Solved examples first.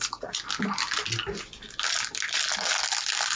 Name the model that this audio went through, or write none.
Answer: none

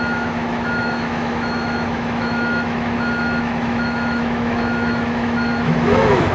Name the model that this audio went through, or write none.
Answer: autoencoder, DAC-VAE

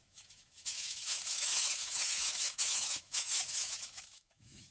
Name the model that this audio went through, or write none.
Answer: autoencoder, DAC-VAE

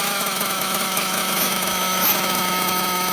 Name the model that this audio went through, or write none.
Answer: autoencoder, DAC-VAE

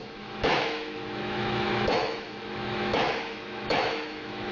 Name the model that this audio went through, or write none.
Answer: autoencoder, DAC-VAE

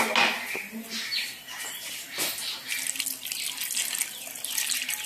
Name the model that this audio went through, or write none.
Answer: none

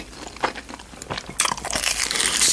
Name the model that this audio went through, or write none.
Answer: none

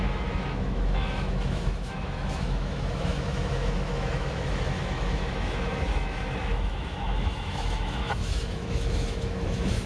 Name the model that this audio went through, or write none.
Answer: autoencoder, DAC-VAE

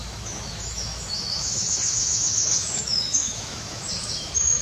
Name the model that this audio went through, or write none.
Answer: autoencoder, DAC-VAE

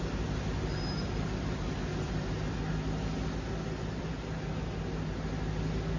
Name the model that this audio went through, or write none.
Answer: none